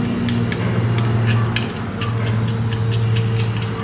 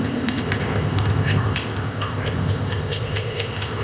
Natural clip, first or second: first